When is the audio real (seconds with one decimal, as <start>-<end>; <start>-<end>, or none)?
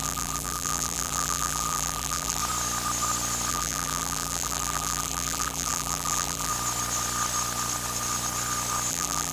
2.4-3.5; 6.5-8.9